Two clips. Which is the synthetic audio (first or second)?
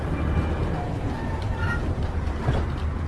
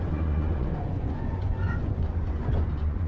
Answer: second